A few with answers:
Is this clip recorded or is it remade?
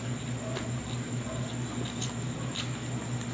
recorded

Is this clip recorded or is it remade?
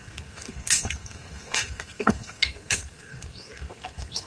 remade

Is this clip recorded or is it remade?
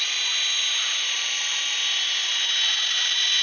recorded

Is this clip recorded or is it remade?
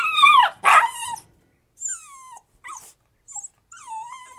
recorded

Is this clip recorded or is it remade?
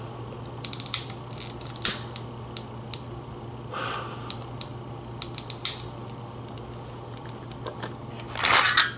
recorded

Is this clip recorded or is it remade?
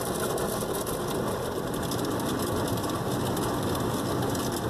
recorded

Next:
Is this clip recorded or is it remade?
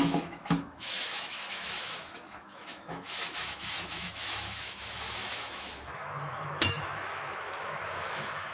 remade